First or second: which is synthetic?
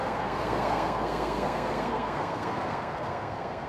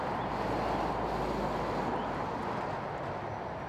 first